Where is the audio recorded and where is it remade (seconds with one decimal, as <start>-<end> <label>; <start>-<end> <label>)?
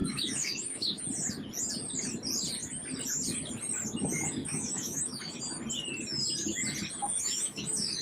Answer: 0.0-1.0 remade; 1.0-4.4 recorded; 4.4-5.4 remade; 5.4-7.0 recorded; 7.0-8.0 remade